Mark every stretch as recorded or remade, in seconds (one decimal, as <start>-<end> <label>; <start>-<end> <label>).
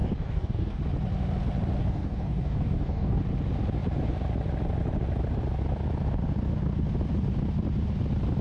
0.0-0.8 remade; 0.8-1.8 recorded; 1.8-3.2 remade; 3.2-8.4 recorded